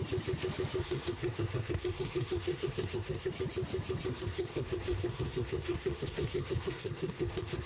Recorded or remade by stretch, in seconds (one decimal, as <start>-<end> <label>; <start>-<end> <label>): 0.0-0.8 recorded; 0.8-3.3 remade; 3.3-4.1 recorded; 4.1-7.7 remade